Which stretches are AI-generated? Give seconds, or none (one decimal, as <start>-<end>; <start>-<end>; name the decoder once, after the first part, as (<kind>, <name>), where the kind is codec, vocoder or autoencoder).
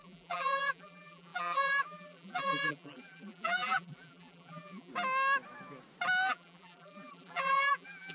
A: 0.0-4.9 (vocoder, BigVGAN v2); 6.3-8.1